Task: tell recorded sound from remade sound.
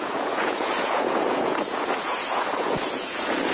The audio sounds remade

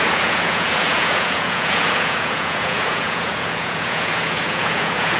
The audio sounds remade